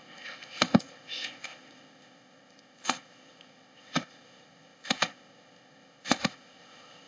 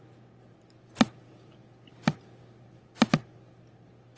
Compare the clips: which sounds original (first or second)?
second